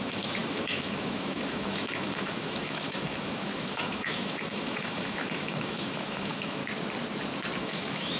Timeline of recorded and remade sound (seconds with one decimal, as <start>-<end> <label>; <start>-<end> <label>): 0.0-6.6 remade; 6.6-7.6 recorded; 7.6-8.2 remade